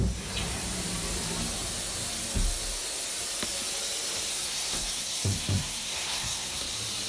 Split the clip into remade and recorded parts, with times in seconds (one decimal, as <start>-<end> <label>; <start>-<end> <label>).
0.0-4.3 recorded; 4.3-6.6 remade; 6.6-7.1 recorded